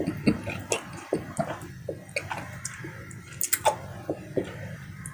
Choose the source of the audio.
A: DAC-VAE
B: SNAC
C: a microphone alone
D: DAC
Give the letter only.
C